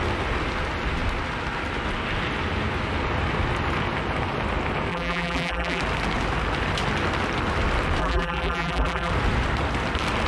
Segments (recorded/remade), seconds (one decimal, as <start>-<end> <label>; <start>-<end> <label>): 0.0-4.9 recorded; 4.9-5.8 remade; 5.8-8.0 recorded; 8.0-9.1 remade; 9.1-10.3 recorded